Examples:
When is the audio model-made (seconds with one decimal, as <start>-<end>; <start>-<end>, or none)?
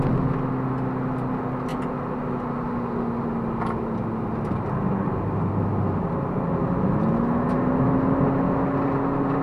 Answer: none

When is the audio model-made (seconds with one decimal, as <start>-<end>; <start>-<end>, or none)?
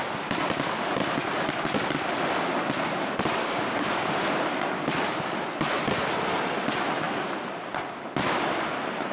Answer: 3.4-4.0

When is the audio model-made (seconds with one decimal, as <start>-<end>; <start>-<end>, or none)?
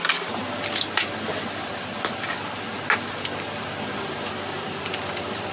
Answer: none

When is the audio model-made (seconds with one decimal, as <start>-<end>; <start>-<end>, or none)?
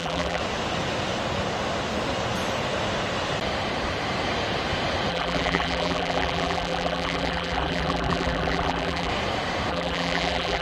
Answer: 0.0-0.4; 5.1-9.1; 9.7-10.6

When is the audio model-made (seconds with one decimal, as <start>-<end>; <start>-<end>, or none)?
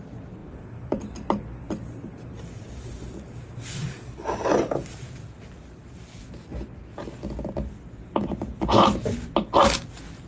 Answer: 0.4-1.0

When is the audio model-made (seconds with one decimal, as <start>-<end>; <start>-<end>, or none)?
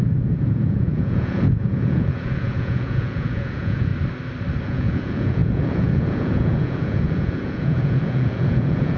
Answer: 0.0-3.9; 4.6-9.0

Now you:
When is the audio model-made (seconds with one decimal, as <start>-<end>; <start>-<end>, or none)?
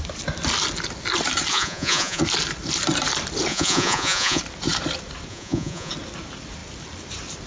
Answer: 1.5-2.2; 3.5-4.4; 5.3-5.9